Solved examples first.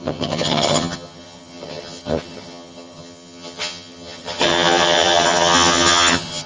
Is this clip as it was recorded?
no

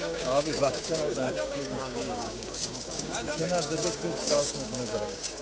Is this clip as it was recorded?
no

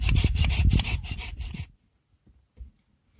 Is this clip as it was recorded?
yes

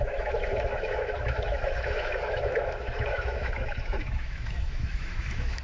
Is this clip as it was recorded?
no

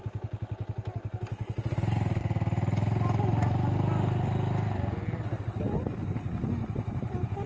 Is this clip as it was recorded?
yes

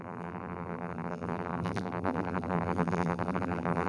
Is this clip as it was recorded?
no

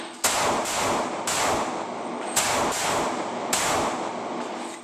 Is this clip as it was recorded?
yes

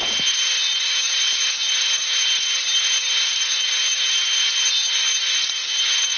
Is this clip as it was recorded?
no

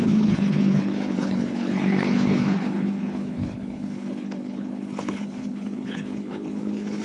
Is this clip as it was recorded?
no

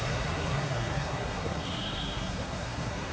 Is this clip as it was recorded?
no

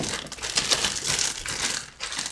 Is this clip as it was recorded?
yes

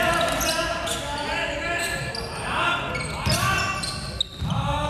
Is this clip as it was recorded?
yes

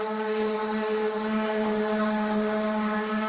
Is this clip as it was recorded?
no